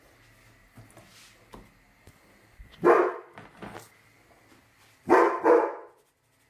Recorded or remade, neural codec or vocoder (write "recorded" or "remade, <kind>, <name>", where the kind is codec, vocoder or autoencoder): recorded